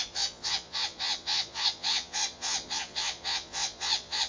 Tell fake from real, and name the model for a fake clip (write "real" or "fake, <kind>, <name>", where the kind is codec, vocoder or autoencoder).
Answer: fake, vocoder, Vocos